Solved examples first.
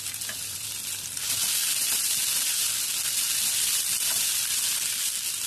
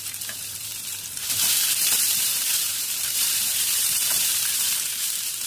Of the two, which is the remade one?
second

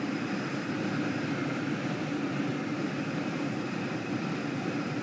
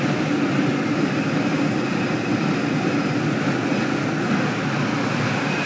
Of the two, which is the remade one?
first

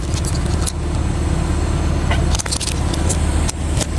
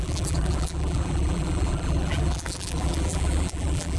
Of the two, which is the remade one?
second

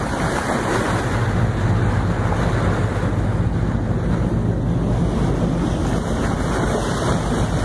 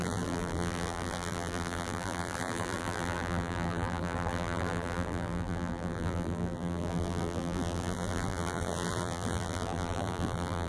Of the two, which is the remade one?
second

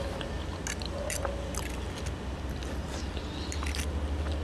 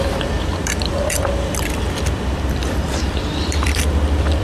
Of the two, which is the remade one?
second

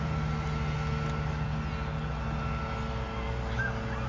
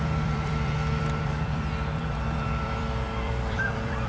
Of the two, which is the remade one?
second